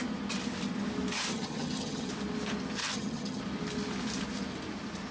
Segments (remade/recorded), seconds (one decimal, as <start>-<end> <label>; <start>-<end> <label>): 0.0-1.3 recorded; 1.3-2.1 remade; 2.1-2.8 recorded; 2.8-3.4 remade; 3.4-5.1 recorded